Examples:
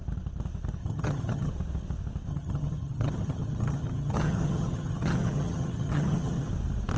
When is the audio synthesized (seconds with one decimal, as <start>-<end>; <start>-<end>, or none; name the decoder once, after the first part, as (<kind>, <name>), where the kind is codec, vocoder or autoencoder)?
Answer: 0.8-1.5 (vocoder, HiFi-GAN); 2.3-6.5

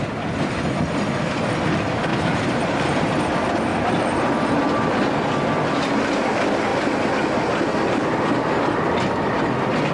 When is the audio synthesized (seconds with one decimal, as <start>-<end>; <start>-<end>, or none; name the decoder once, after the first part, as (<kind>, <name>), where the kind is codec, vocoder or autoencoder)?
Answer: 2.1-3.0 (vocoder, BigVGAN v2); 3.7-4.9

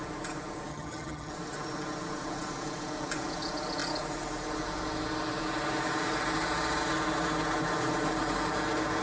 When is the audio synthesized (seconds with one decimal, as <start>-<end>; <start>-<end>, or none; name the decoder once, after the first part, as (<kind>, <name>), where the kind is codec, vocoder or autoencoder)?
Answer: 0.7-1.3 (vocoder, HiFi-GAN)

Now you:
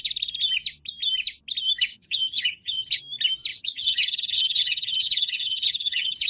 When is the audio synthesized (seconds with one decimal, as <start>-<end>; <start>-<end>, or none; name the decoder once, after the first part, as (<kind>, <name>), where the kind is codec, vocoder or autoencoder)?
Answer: 1.9-3.0 (vocoder, HiFi-GAN); 3.5-6.3

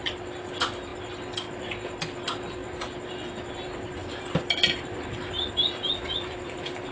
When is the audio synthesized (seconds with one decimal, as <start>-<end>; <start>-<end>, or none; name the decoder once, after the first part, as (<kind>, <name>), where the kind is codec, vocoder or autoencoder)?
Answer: none

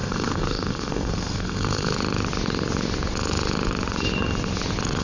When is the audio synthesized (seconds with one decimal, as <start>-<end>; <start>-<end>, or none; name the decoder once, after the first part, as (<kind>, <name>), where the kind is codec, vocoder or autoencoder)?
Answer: 0.0-1.9 (codec, SNAC)